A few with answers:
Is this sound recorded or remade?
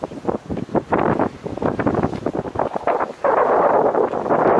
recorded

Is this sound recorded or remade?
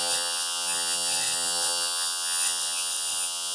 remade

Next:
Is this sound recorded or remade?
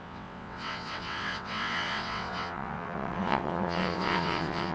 remade